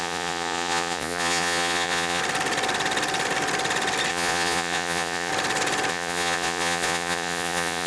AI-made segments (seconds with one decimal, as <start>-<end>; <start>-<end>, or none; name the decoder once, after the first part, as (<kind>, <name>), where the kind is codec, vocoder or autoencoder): 0.0-2.2 (vocoder, Vocos); 4.1-5.3; 5.9-7.9